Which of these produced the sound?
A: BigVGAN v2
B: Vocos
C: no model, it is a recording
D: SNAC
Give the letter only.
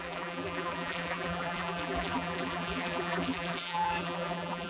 A